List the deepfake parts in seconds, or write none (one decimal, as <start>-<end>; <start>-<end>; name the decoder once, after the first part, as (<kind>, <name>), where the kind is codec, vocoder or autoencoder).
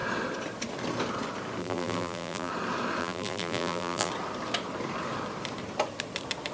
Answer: 1.6-2.5 (vocoder, BigVGAN v2); 3.0-4.1